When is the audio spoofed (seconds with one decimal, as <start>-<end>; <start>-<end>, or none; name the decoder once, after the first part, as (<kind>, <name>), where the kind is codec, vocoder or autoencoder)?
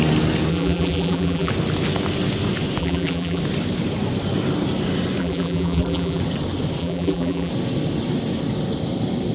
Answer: 0.5-1.5 (vocoder, BigVGAN v2); 2.8-3.4; 5.2-6.2; 6.8-7.5